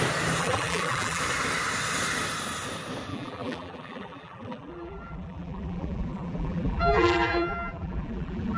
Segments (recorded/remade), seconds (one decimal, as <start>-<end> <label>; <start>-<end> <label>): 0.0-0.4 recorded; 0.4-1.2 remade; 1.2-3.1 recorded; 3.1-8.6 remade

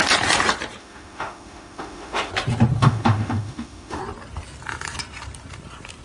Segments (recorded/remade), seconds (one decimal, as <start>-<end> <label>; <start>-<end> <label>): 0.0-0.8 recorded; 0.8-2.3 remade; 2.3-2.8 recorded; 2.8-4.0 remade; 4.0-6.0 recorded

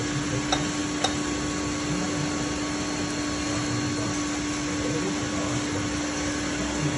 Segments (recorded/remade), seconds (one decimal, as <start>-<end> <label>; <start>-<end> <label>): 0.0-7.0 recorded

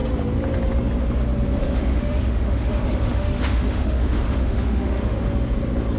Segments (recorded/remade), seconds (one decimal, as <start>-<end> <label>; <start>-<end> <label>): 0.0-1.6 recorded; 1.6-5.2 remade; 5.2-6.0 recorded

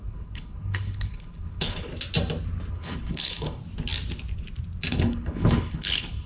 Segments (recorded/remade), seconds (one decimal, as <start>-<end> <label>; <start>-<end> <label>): 0.0-1.9 remade; 1.9-2.7 recorded; 2.7-3.6 remade; 3.6-4.9 recorded; 4.9-6.3 remade